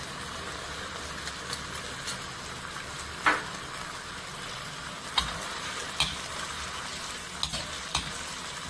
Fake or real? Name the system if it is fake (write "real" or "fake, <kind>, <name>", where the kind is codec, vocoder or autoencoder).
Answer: real